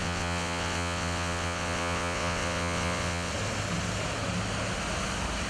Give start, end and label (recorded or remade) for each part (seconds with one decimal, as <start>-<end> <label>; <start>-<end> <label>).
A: 0.0-3.3 remade; 3.3-5.5 recorded